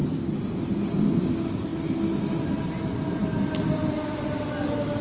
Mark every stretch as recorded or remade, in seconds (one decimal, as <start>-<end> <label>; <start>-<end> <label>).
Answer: 0.0-5.0 recorded